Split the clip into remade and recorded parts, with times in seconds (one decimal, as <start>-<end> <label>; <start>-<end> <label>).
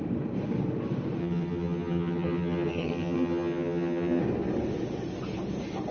0.0-1.2 recorded; 1.2-4.2 remade; 4.2-5.9 recorded